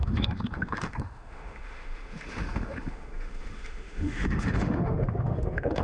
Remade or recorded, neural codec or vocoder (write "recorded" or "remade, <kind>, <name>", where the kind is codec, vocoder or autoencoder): remade, autoencoder, DAC-VAE